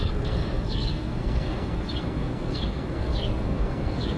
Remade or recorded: remade